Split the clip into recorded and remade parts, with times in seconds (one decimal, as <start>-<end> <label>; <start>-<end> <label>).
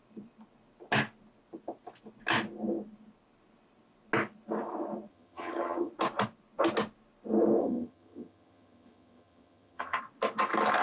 0.0-5.1 recorded; 5.1-5.9 remade; 5.9-7.6 recorded; 7.6-10.0 remade; 10.0-10.8 recorded